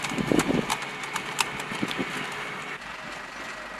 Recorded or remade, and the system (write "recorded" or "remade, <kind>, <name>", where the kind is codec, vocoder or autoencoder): recorded